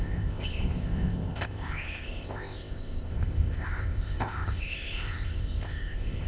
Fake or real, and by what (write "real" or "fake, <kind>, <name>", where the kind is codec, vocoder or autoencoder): fake, codec, ZipCodec